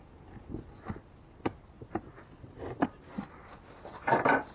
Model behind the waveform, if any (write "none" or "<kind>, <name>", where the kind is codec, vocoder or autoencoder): none